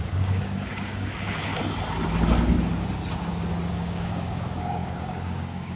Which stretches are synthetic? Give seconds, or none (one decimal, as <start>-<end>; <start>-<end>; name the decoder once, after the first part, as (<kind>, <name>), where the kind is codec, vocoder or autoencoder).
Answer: 0.0-1.5 (codec, DAC); 3.7-5.8